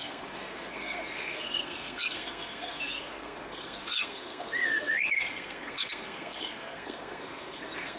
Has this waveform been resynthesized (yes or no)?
yes